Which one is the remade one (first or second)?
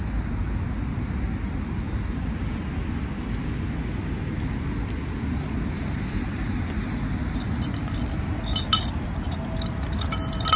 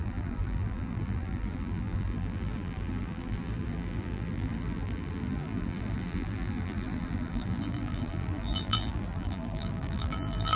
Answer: second